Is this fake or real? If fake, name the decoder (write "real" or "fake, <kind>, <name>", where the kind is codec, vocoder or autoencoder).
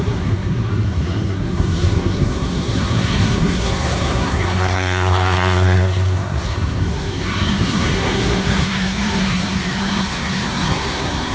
fake, codec, SNAC